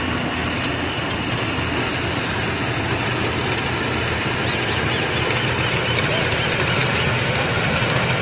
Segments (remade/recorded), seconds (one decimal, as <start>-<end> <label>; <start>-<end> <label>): 0.0-8.2 recorded